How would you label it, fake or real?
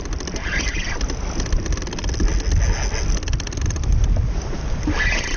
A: real